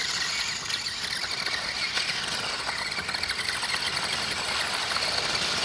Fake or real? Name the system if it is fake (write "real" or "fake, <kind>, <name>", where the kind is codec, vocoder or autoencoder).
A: real